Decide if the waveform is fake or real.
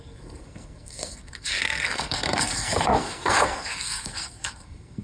fake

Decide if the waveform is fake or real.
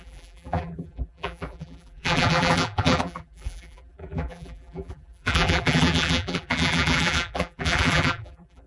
fake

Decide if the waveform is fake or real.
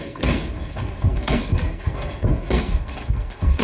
fake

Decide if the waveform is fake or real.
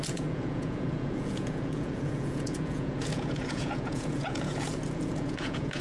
fake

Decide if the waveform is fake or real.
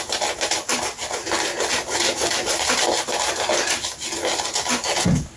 real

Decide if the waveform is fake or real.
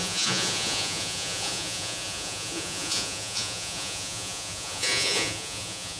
fake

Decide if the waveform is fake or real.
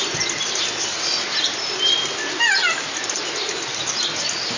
real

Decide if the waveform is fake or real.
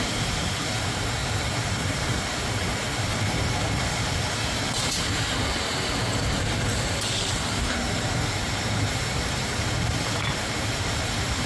fake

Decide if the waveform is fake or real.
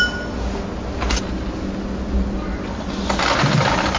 real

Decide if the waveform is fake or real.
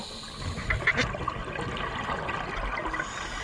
real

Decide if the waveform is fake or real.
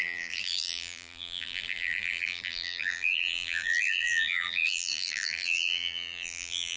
fake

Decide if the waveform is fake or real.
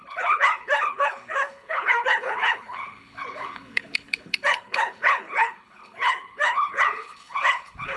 fake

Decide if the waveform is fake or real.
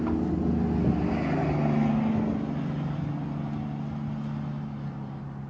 real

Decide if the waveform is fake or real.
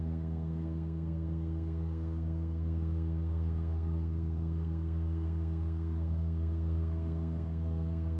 fake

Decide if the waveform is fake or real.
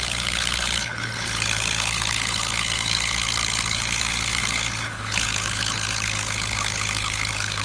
fake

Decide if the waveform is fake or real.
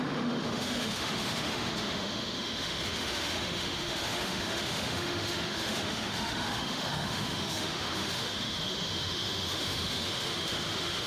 fake